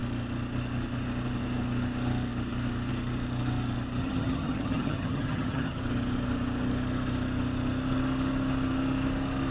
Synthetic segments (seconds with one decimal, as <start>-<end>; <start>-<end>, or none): 4.0-5.8